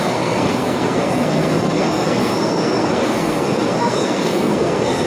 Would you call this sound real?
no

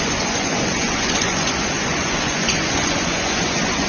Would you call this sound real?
no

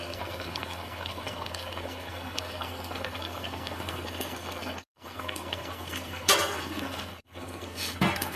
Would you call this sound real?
no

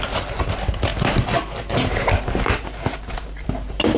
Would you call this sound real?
yes